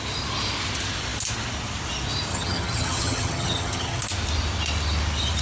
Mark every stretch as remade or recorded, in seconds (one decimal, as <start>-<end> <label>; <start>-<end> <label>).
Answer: 0.0-2.3 recorded; 2.3-4.0 remade; 4.0-5.4 recorded